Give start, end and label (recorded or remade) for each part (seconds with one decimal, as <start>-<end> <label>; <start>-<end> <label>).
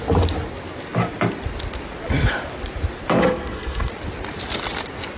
0.0-3.2 recorded; 3.2-3.9 remade; 3.9-5.2 recorded